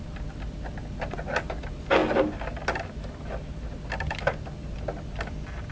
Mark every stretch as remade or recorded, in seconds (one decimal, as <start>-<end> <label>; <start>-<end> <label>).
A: 0.0-5.7 recorded